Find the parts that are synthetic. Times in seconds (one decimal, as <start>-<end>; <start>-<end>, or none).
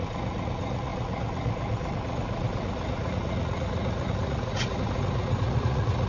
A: 0.0-6.1